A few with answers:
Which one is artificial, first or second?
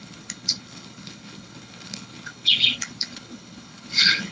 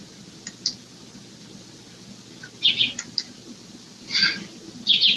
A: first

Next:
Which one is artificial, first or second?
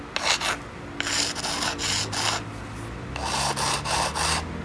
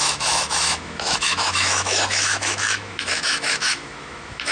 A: second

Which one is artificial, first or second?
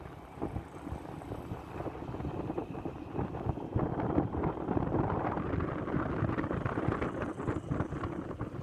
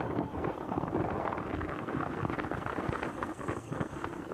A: second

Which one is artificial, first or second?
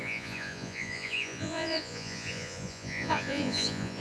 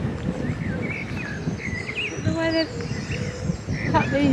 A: first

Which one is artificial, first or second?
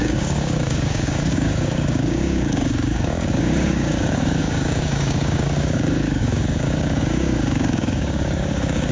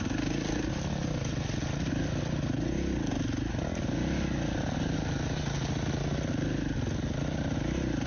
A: first